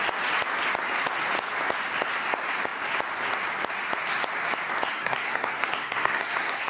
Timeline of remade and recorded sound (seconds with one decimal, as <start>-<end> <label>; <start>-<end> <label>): 0.0-4.9 recorded; 4.9-6.7 remade